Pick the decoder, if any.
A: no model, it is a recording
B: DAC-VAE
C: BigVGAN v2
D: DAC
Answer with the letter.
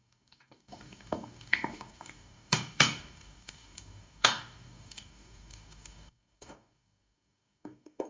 D